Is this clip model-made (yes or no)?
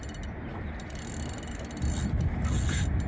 no